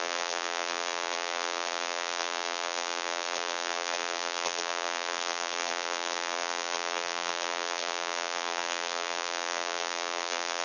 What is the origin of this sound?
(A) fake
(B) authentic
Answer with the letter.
A